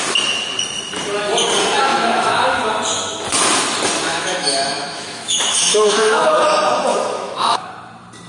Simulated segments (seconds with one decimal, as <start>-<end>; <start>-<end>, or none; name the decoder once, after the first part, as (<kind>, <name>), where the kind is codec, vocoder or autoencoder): 1.9-2.6 (autoencoder, DAC-VAE); 4.1-6.4; 6.9-7.7